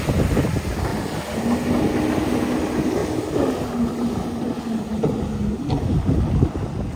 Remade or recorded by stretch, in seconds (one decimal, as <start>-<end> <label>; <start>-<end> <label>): 0.0-7.0 recorded